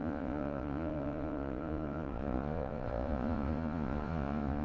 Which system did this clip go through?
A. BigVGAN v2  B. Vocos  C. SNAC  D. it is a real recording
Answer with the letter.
B